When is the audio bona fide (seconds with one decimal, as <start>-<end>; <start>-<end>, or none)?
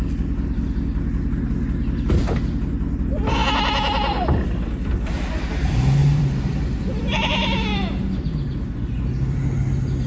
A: 0.0-6.0; 6.6-10.1